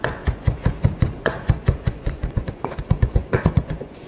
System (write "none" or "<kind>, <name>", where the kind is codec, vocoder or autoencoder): vocoder, Vocos